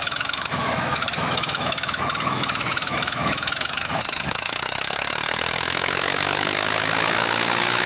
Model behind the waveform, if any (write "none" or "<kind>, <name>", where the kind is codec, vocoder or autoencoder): autoencoder, DAC-VAE